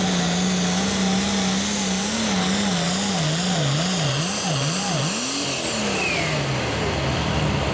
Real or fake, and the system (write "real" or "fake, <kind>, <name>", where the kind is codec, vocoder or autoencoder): real